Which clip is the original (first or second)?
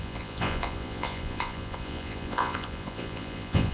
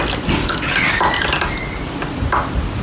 second